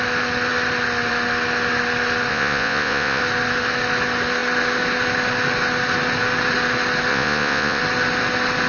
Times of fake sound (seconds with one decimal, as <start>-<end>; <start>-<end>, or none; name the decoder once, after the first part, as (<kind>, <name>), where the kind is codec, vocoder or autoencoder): 2.3-3.2 (vocoder, Vocos); 7.1-7.8